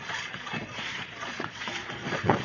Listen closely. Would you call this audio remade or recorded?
remade